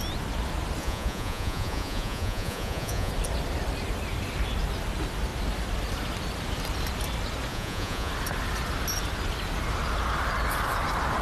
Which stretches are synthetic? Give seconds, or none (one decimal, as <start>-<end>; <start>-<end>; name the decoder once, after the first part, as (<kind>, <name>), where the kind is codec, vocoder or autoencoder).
0.8-3.1 (vocoder, Vocos); 7.5-8.1